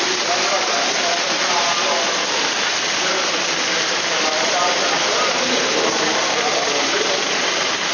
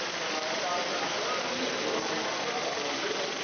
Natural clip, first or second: second